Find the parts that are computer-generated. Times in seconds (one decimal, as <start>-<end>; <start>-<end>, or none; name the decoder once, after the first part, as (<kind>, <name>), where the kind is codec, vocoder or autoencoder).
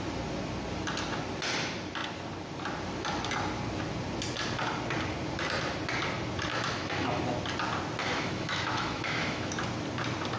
6.5-7.2 (autoencoder, DAC-VAE); 8.0-9.5